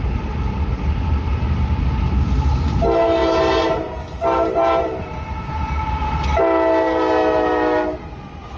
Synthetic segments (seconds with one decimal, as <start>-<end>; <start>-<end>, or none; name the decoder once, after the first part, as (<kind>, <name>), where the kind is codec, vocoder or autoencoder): none

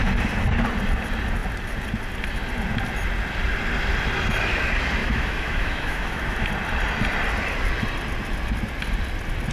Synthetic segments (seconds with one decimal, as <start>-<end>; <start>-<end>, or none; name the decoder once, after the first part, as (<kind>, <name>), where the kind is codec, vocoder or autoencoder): 5.0-6.5 (autoencoder, DAC-VAE)

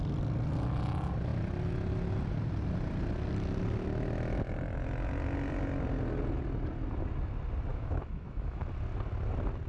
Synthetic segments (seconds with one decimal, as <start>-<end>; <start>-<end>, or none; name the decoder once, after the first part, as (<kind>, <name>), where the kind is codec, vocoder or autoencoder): 7.7-8.6 (autoencoder, DAC-VAE)

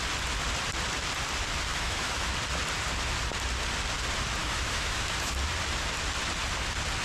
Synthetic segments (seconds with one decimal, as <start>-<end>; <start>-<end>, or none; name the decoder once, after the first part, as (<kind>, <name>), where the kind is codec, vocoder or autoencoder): 1.7-2.3 (autoencoder, DAC-VAE); 4.4-5.3

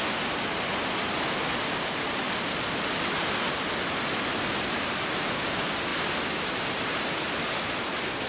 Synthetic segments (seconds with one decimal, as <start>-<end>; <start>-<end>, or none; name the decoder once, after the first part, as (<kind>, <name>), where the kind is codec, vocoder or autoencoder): none

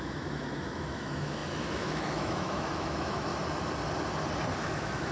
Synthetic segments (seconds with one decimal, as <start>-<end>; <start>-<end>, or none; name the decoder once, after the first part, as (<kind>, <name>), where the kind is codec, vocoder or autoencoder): 0.0-3.3 (autoencoder, DAC-VAE); 4.6-5.1

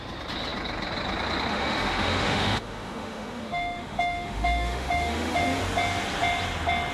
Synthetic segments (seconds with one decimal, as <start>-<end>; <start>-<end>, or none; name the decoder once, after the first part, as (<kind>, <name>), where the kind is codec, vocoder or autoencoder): 1.5-5.6 (autoencoder, DAC-VAE)